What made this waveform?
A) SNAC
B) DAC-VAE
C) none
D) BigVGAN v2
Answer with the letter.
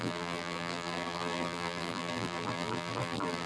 D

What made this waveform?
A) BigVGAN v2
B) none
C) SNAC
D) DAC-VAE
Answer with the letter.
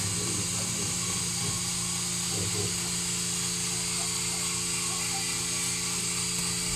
B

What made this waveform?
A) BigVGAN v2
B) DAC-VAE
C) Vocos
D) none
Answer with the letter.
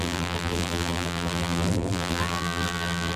A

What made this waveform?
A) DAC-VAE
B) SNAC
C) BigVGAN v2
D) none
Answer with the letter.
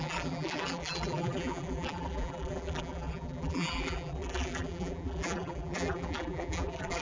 C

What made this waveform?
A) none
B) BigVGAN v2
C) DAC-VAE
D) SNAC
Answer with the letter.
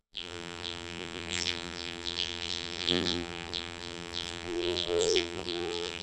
B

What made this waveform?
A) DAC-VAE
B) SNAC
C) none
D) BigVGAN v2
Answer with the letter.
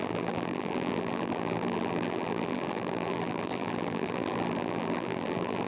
D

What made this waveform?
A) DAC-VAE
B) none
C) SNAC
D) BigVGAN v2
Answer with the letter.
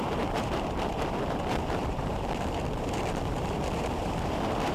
D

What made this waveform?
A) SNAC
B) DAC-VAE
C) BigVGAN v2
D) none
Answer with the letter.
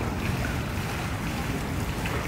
D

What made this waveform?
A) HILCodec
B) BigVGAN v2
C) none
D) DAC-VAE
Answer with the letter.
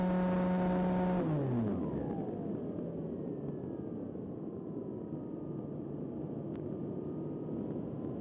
C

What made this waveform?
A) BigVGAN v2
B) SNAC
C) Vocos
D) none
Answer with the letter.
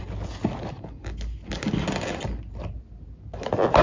D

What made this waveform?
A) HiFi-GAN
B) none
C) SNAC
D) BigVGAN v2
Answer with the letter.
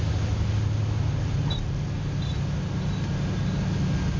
B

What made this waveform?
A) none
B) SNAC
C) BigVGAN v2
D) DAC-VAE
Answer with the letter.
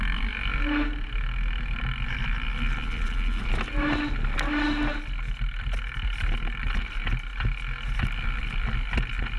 A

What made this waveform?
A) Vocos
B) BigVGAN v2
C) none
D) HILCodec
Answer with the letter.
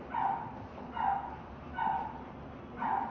C